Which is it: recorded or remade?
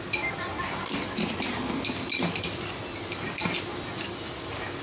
recorded